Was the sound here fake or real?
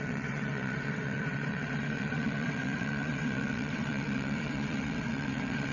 fake